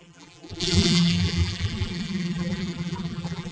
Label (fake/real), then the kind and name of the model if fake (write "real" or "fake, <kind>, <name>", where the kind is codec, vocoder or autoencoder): fake, vocoder, BigVGAN v2